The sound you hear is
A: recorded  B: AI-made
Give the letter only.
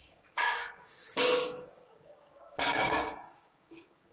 B